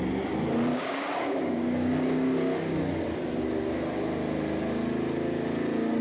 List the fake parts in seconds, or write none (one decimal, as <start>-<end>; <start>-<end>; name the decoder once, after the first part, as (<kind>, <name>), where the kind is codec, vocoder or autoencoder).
0.7-2.8 (codec, DAC)